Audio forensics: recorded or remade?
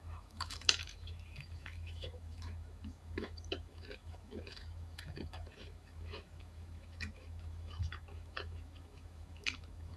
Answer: remade